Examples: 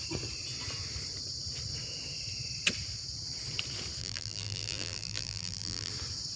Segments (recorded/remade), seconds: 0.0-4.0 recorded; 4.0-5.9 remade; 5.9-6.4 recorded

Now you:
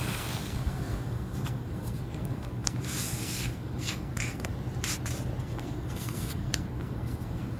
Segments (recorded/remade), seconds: 0.0-4.5 remade; 4.5-5.4 recorded; 5.4-7.6 remade